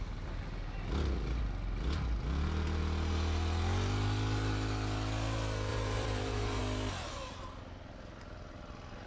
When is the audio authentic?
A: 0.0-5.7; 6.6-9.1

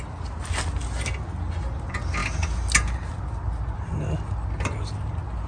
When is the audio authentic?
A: 0.0-5.5